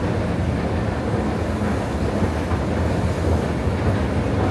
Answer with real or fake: real